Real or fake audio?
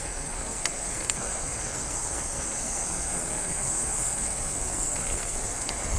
fake